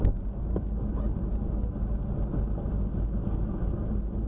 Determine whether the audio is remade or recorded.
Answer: recorded